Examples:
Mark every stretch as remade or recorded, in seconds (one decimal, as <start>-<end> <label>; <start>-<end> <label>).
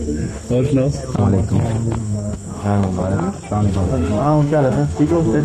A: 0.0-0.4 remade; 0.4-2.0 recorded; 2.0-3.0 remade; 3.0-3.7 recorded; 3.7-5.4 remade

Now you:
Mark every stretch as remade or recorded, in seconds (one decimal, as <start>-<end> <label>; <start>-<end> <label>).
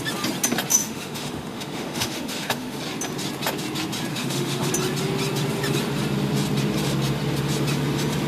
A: 0.0-0.7 recorded; 0.7-2.8 remade; 2.8-4.1 recorded; 4.1-4.7 remade; 4.7-8.3 recorded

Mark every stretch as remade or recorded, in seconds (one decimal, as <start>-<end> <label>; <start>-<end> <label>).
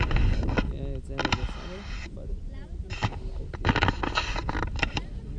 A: 0.0-5.4 recorded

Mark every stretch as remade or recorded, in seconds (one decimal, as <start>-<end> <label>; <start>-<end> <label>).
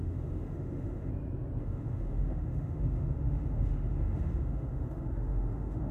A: 0.0-1.1 remade; 1.1-1.6 recorded; 1.6-5.9 remade